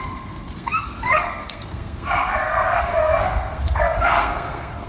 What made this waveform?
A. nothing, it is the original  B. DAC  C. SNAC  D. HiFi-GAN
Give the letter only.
C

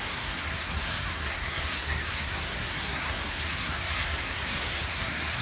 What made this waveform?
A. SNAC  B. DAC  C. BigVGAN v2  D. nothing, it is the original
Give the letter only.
A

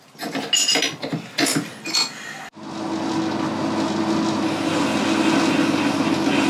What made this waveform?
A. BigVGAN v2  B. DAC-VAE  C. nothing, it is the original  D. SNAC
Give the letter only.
C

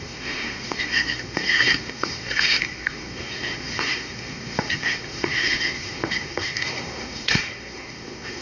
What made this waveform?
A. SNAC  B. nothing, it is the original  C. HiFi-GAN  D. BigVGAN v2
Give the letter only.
A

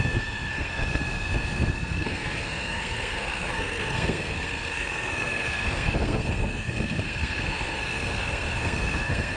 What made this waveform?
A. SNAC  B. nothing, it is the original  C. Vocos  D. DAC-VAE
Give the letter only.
A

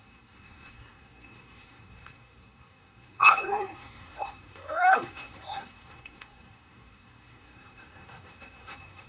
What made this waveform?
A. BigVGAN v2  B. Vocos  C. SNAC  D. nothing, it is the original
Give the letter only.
C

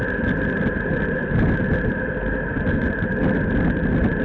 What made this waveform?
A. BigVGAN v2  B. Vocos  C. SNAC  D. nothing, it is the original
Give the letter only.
D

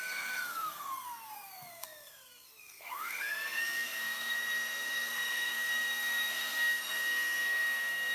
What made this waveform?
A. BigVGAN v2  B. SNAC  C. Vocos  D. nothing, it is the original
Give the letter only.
B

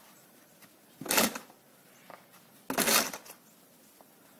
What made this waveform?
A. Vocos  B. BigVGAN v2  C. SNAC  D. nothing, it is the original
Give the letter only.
D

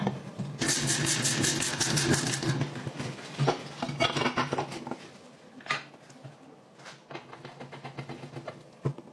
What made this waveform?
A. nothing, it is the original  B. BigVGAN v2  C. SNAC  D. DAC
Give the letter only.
A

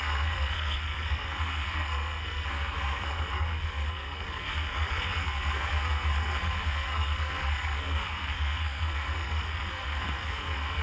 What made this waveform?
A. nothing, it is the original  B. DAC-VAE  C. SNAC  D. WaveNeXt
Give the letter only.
C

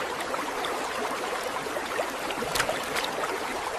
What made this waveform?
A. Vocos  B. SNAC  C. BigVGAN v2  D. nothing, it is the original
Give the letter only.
D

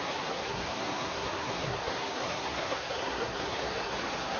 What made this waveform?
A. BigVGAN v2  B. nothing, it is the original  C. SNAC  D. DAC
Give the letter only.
C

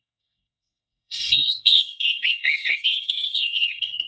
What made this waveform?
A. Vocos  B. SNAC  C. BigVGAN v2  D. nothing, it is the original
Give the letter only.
B